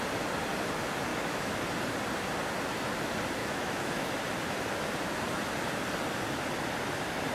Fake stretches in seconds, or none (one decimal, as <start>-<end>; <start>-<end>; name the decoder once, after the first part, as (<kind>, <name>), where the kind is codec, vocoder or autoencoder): 1.1-1.6 (autoencoder, DAC-VAE); 3.4-4.1